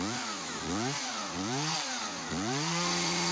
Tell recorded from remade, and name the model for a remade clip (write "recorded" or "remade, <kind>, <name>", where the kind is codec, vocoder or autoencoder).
remade, vocoder, Vocos